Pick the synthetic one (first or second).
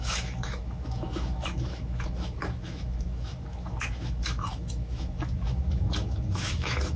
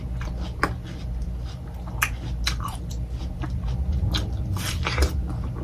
first